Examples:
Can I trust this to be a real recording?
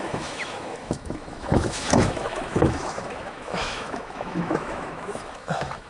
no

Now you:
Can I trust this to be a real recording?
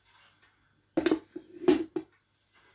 yes